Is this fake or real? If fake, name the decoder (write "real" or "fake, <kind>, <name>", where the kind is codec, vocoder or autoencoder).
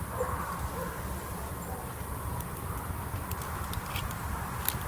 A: real